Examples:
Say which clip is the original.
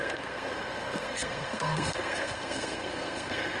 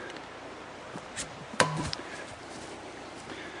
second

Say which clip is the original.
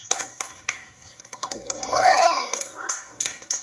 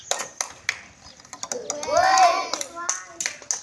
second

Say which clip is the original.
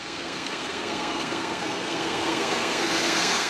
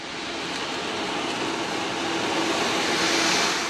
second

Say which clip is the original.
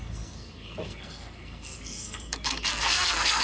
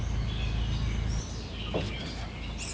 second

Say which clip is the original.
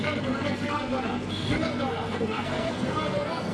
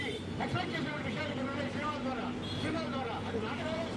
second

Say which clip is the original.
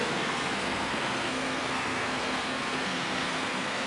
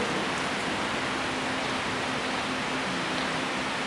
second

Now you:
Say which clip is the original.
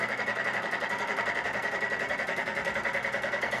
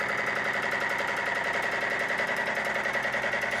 second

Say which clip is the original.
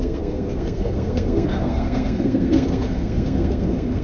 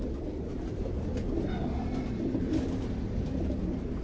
second